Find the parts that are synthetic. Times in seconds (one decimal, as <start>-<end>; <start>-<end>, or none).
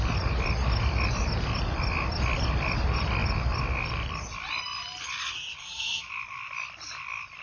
0.0-7.4